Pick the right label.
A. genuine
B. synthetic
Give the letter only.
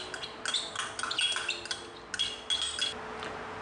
A